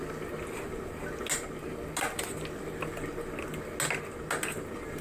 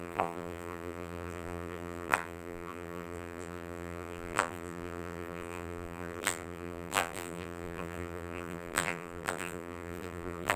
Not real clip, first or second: second